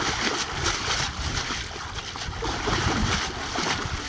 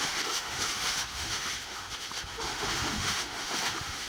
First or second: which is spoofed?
second